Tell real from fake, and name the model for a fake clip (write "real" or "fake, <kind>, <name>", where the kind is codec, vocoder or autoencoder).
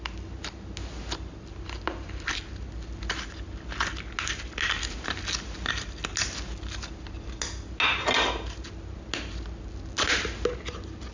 real